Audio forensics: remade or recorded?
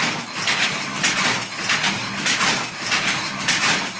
recorded